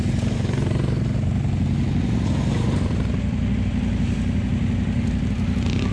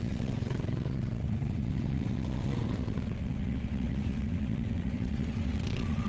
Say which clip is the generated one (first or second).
second